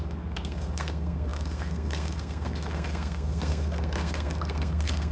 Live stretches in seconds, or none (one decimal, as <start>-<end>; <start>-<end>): none